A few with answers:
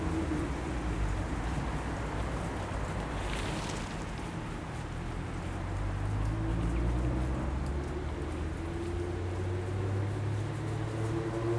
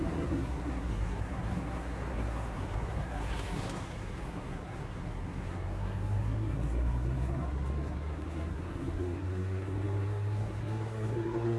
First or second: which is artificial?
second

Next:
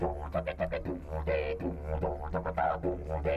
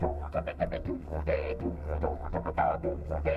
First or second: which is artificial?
second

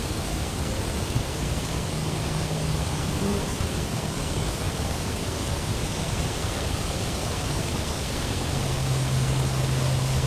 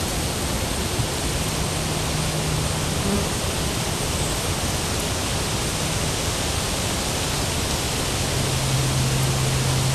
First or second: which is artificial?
first